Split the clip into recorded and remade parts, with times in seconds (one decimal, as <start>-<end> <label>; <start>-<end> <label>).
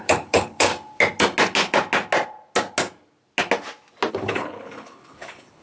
0.0-0.7 remade; 0.7-4.1 recorded; 4.1-5.6 remade